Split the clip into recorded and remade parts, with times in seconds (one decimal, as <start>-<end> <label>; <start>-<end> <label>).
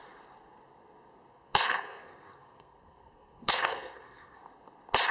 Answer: 0.0-1.3 recorded; 1.3-4.4 remade; 4.4-5.1 recorded